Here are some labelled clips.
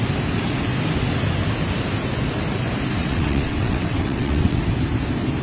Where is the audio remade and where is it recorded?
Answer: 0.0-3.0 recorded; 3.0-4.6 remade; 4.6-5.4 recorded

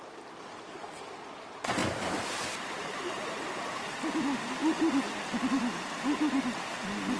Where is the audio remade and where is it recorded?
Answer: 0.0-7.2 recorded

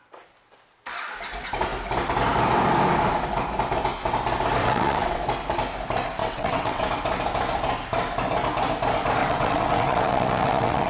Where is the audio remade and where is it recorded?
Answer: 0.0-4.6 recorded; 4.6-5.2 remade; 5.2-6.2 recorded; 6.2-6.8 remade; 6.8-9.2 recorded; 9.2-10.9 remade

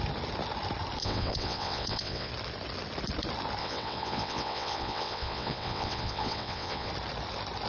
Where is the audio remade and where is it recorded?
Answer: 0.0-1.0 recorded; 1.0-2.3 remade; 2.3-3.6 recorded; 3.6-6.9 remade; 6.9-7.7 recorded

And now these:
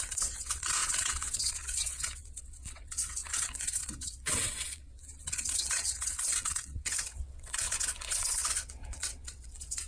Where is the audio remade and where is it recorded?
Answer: 0.0-9.9 remade

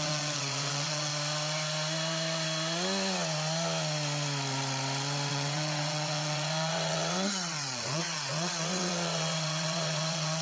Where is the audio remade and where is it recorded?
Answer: 0.0-1.1 remade; 1.1-5.3 recorded; 5.3-10.4 remade

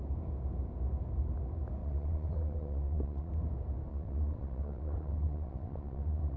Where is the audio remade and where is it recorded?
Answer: 0.0-1.8 recorded; 1.8-3.3 remade; 3.3-3.9 recorded; 3.9-6.4 remade

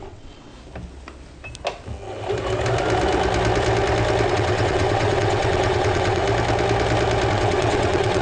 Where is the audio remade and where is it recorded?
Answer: 0.0-0.5 remade; 0.5-4.3 recorded; 4.3-6.2 remade; 6.2-7.3 recorded; 7.3-8.2 remade